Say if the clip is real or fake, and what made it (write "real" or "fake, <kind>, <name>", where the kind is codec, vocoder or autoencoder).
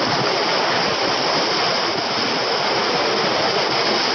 real